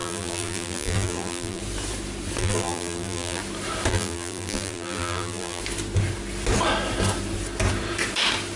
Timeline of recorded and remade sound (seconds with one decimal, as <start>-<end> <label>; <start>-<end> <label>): 0.0-1.6 remade; 1.6-2.4 recorded; 2.4-3.4 remade; 3.4-3.9 recorded; 3.9-5.6 remade; 5.6-8.6 recorded